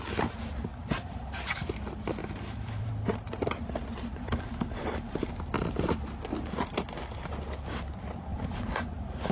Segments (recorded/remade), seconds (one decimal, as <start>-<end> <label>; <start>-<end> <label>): 0.0-0.7 recorded; 0.7-1.6 remade; 1.6-2.2 recorded; 2.2-2.9 remade; 2.9-4.1 recorded; 4.1-5.3 remade; 5.3-8.3 recorded; 8.3-9.3 remade